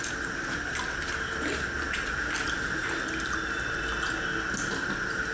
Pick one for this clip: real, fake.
real